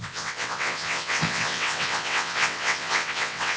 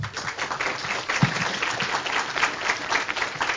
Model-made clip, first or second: first